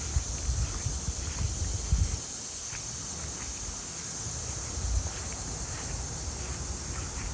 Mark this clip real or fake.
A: real